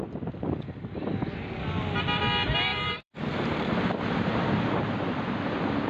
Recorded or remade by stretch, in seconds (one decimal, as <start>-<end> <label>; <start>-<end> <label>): 0.0-2.7 recorded; 2.7-4.8 remade; 4.8-5.9 recorded